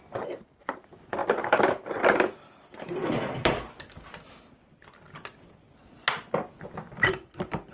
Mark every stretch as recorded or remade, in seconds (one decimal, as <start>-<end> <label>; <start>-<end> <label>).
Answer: 0.0-1.2 recorded; 1.2-4.6 remade; 4.6-7.7 recorded